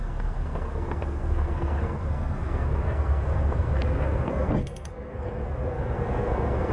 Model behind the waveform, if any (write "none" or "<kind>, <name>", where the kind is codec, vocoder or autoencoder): codec, SNAC